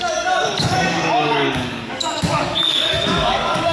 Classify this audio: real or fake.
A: fake